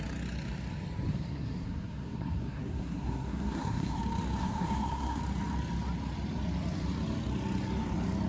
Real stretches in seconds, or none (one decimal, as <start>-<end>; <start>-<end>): 0.0-1.1; 4.0-4.4; 5.2-8.3